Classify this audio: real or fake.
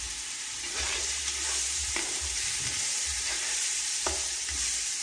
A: fake